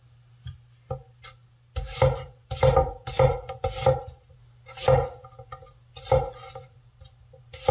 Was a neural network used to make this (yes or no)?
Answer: no